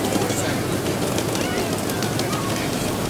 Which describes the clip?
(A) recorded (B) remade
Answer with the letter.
A